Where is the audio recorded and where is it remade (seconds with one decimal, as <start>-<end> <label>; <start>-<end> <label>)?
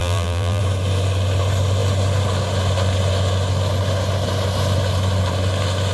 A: 0.0-0.6 remade; 0.6-5.9 recorded